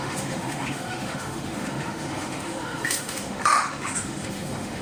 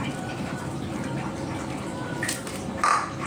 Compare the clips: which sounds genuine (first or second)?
second